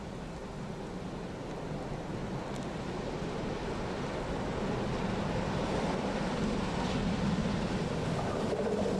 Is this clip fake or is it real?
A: real